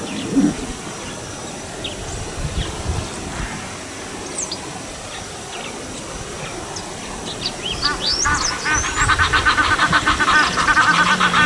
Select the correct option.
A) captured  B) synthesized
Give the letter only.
A